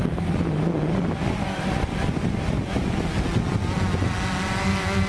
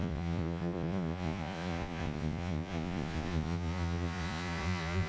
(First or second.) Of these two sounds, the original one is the first